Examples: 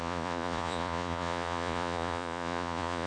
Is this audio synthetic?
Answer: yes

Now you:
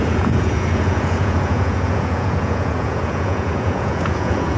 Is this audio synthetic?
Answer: yes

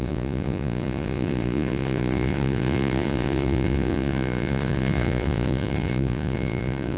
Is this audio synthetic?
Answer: yes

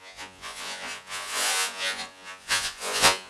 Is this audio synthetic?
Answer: yes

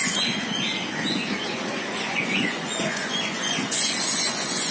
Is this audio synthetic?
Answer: yes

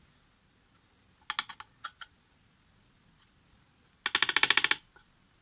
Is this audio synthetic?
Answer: no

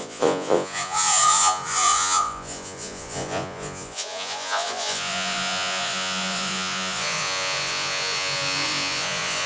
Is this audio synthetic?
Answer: yes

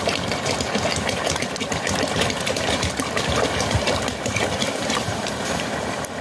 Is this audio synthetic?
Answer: no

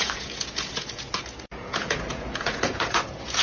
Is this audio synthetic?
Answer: yes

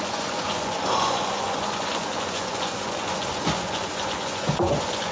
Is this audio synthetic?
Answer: yes